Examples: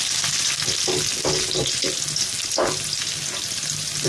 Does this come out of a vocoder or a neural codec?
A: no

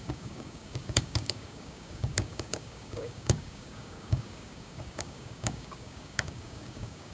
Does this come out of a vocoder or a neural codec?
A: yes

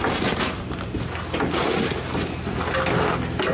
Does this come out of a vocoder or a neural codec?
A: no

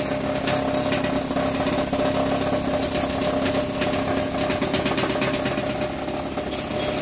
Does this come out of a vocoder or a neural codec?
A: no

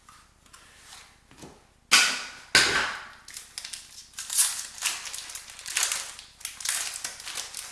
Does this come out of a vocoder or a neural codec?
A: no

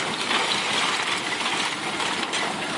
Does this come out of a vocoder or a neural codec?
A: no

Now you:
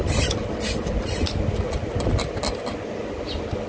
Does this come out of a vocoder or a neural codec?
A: no